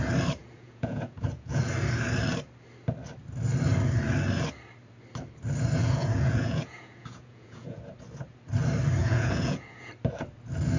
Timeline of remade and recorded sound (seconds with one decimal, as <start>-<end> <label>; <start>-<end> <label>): 0.0-0.4 recorded; 0.4-1.6 remade; 1.6-5.8 recorded; 5.8-7.8 remade; 7.8-9.0 recorded; 9.0-9.9 remade; 9.9-10.8 recorded